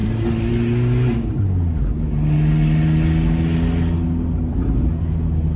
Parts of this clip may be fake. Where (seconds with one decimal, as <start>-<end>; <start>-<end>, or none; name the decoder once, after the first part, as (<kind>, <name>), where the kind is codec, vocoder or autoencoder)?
none